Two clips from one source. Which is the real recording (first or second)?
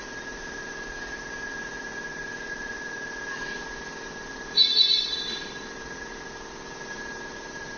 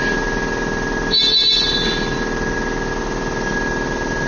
second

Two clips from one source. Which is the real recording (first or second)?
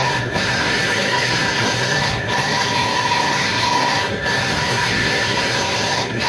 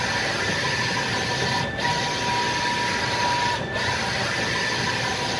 second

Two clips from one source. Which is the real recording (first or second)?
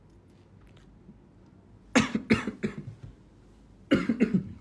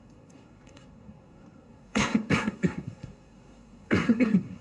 first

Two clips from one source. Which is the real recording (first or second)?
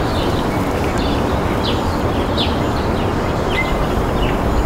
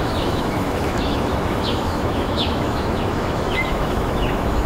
first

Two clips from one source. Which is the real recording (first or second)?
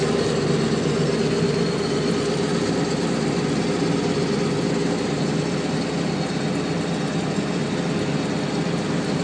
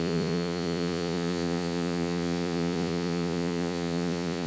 first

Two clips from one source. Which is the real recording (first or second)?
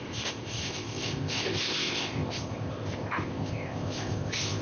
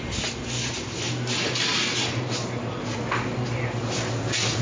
second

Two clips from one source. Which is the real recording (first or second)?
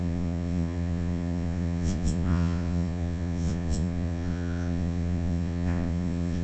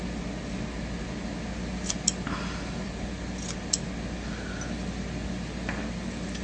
second